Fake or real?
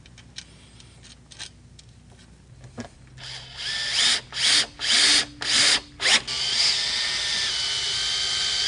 real